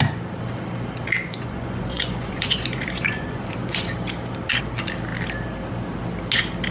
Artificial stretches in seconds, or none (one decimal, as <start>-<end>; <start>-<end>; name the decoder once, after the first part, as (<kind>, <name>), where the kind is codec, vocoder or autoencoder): 1.2-3.9 (vocoder, Vocos)